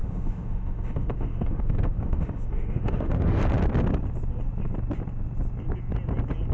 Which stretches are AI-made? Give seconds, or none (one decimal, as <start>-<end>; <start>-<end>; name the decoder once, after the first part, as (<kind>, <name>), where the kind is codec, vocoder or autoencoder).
0.0-3.4 (autoencoder, DAC-VAE)